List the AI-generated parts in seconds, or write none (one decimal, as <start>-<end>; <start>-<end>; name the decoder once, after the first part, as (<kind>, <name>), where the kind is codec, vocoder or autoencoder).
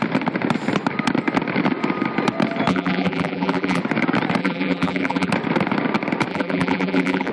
2.7-3.8 (vocoder, BigVGAN v2); 4.4-5.3; 6.3-7.3